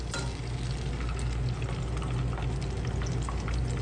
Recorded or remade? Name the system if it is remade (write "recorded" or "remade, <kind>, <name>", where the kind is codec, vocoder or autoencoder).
recorded